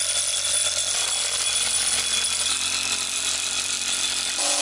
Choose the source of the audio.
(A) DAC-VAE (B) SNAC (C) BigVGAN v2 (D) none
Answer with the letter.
D